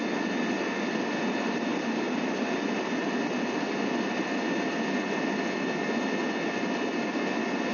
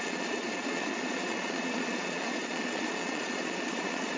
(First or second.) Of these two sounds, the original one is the first